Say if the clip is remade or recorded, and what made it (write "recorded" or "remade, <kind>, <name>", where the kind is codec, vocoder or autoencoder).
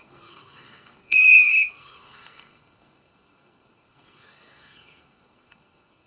remade, codec, SNAC